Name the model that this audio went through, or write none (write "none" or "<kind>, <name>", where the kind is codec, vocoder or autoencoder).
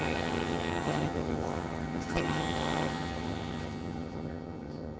vocoder, HiFi-GAN